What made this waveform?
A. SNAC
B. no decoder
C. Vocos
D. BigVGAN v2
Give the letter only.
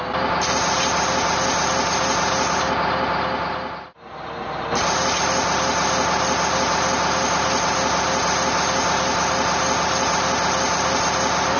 B